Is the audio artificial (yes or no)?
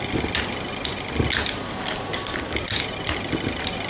no